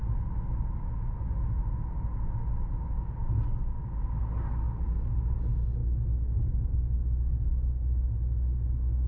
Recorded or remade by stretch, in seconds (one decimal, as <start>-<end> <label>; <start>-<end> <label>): 0.0-9.1 recorded